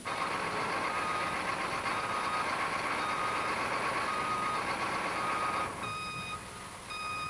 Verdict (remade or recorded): recorded